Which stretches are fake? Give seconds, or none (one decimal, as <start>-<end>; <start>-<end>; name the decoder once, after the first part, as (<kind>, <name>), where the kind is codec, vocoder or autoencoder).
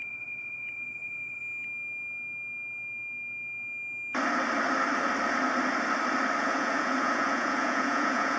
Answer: 0.0-1.4 (vocoder, Vocos); 6.4-8.4